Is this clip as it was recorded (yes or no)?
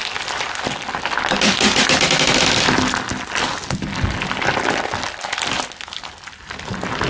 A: yes